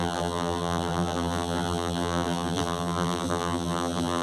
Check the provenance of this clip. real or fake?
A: fake